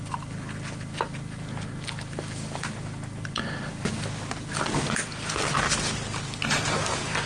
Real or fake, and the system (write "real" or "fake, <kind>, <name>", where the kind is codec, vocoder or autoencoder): real